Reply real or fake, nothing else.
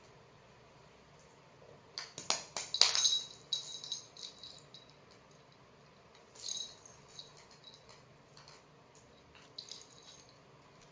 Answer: real